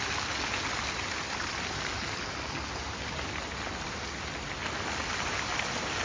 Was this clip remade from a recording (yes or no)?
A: no